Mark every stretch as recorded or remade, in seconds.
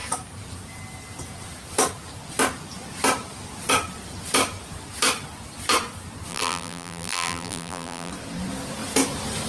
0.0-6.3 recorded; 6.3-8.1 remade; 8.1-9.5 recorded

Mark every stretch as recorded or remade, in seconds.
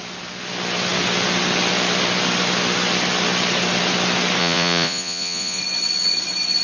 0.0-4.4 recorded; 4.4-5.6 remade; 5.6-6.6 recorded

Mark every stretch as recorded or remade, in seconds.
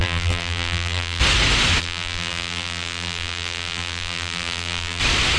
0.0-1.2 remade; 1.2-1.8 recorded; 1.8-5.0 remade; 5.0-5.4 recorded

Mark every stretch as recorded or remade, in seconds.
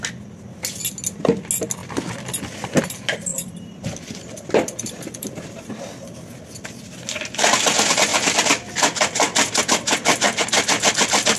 0.0-3.3 recorded; 3.3-5.6 remade; 5.6-11.4 recorded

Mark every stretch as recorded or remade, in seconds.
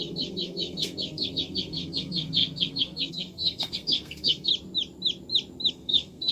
0.0-4.5 remade; 4.5-5.7 recorded; 5.7-6.3 remade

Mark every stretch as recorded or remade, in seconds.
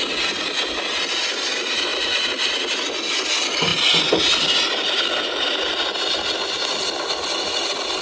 0.0-8.0 recorded